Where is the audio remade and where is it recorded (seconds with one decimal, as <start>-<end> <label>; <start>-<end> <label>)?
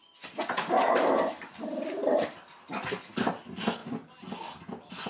0.0-5.1 recorded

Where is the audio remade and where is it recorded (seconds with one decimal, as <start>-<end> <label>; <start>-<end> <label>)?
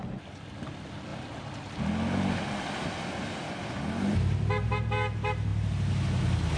0.0-6.6 recorded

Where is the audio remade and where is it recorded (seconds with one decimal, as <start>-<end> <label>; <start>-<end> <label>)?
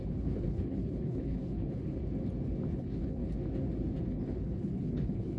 0.0-2.0 remade; 2.0-2.7 recorded; 2.7-3.2 remade; 3.2-4.1 recorded; 4.1-5.4 remade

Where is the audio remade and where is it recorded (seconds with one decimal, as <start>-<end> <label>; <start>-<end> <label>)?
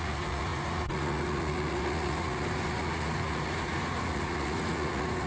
0.0-5.3 remade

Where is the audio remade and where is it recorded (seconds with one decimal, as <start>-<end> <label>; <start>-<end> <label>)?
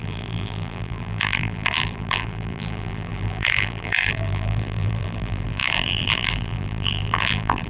0.0-7.7 remade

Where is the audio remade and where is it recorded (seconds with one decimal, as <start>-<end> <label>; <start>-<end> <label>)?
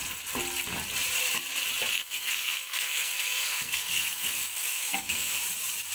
0.0-1.9 recorded; 1.9-5.4 remade; 5.4-5.9 recorded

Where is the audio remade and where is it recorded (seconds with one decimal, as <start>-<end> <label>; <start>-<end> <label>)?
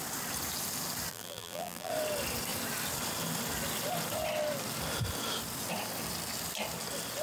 0.0-1.1 recorded; 1.1-1.9 remade; 1.9-7.2 recorded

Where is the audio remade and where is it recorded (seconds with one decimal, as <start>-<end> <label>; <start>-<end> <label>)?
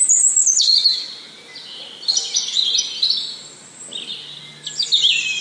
0.0-5.4 recorded